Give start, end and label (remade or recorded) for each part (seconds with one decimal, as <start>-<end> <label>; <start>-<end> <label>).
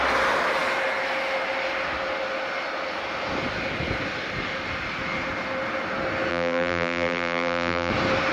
0.0-6.3 recorded; 6.3-7.9 remade; 7.9-8.3 recorded